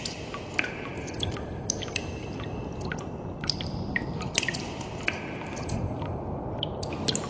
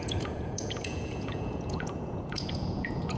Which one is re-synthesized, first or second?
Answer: second